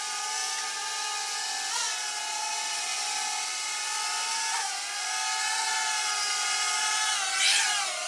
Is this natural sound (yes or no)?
yes